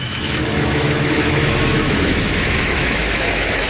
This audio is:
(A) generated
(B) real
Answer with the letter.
A